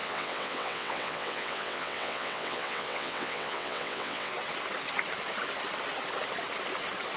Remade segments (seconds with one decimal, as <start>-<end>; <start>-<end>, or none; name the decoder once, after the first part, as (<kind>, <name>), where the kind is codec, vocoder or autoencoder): 0.0-4.3 (vocoder, WaveNeXt)